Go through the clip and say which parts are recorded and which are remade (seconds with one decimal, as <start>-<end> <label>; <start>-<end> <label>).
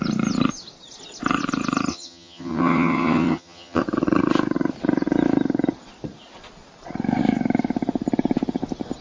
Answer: 0.0-1.9 recorded; 1.9-3.8 remade; 3.8-9.0 recorded